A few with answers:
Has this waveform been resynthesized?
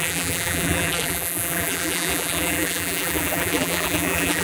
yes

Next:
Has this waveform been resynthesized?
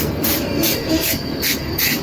yes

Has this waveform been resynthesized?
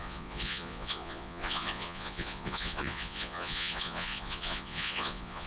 yes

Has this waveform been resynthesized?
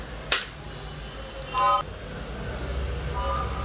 no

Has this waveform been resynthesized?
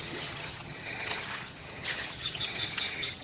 yes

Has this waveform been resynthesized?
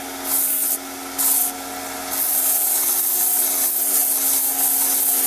no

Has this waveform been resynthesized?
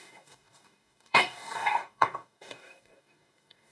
yes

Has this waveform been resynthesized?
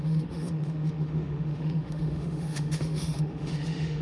yes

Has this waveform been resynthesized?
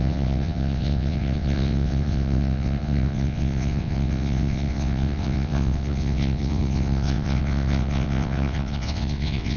yes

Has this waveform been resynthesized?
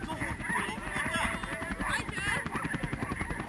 no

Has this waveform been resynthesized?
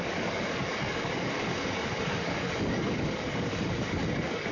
yes